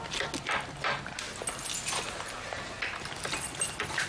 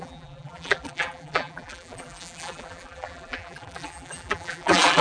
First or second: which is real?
first